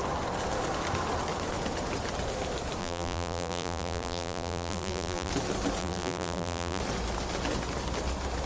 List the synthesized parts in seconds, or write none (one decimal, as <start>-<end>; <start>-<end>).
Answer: 2.8-5.3; 5.8-6.8

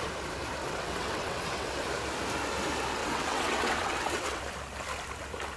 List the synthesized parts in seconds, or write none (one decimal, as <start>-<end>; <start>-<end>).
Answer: 0.6-1.8; 3.0-4.4

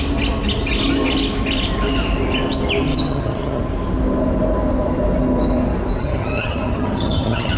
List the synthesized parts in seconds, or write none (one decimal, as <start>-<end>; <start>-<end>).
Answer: 2.9-3.6; 6.0-7.6